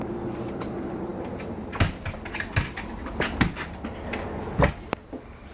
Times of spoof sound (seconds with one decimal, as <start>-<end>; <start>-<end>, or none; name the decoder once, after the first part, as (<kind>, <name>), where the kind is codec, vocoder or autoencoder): none